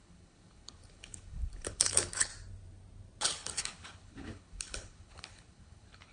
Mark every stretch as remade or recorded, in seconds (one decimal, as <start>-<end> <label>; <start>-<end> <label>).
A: 0.0-2.3 remade; 2.3-3.2 recorded; 3.2-6.1 remade

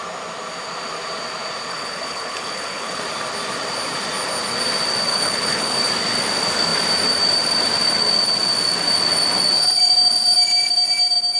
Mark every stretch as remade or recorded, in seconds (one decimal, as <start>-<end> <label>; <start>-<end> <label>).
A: 0.0-1.7 recorded; 1.7-3.0 remade; 3.0-5.1 recorded; 5.1-5.9 remade; 5.9-11.4 recorded